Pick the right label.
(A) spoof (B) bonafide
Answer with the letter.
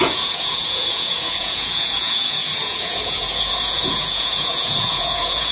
A